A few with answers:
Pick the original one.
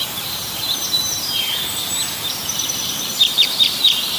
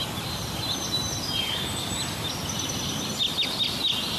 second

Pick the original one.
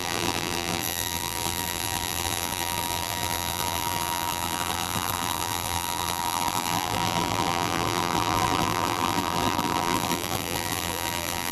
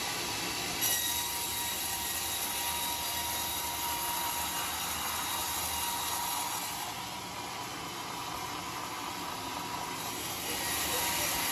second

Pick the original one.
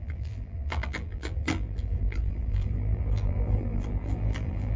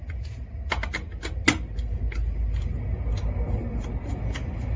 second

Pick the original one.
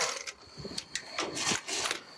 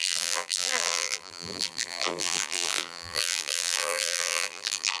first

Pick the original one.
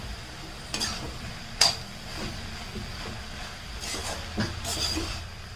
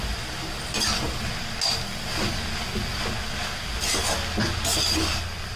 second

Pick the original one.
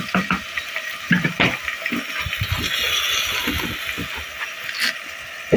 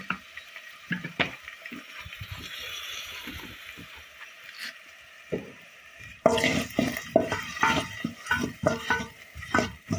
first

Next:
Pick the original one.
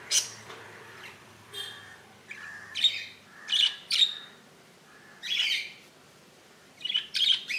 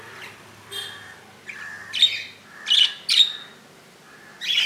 second